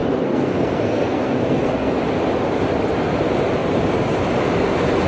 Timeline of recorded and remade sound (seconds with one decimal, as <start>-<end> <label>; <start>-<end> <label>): 0.0-1.9 remade; 1.9-5.1 recorded